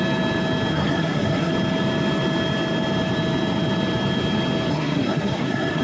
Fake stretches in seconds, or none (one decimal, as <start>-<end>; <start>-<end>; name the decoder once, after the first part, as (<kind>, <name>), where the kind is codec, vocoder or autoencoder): 0.7-1.5 (codec, SNAC); 4.7-5.8

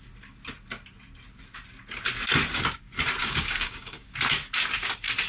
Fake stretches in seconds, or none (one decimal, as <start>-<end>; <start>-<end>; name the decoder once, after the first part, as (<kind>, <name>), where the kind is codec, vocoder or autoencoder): 3.2-4.1 (codec, DAC)

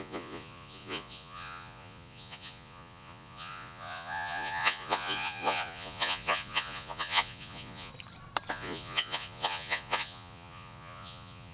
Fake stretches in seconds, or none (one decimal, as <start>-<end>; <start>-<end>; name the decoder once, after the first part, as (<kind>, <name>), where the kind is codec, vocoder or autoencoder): 0.0-7.9 (vocoder, Vocos); 8.5-11.5